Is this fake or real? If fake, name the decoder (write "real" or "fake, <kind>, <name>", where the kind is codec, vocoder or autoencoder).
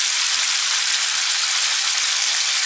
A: fake, vocoder, BigVGAN v2